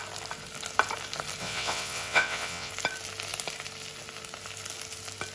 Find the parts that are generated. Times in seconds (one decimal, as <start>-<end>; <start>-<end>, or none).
1.4-2.7